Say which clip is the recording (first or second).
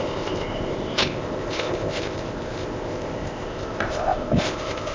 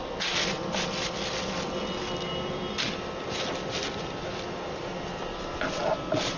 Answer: second